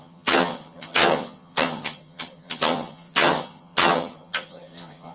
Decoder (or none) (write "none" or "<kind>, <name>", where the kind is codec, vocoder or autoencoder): vocoder, HiFi-GAN